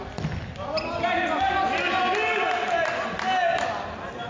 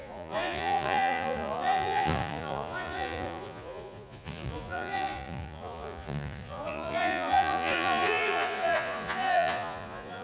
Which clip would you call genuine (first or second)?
first